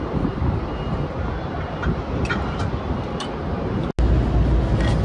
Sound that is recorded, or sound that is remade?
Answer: recorded